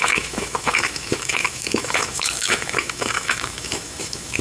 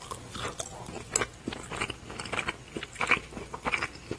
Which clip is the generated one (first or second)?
first